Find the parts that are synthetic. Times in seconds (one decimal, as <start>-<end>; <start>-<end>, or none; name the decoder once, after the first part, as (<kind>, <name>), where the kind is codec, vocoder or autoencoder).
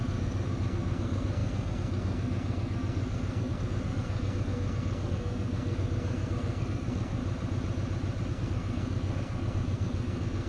0.0-7.2 (codec, SNAC); 8.3-10.5